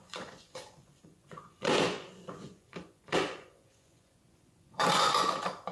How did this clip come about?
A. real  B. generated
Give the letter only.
B